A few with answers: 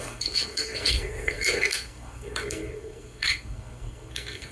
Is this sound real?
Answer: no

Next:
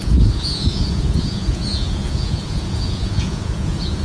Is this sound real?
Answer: no